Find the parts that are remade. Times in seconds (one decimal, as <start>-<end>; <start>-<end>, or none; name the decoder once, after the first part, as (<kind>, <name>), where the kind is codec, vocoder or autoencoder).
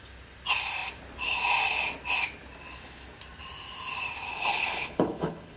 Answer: 4.3-5.6 (codec, HILCodec)